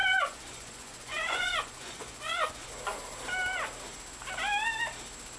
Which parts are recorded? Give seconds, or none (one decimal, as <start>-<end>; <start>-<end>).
2.7-5.4